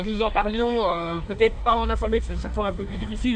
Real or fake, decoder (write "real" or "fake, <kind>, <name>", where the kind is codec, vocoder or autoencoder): fake, codec, SNAC